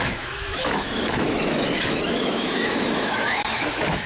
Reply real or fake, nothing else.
fake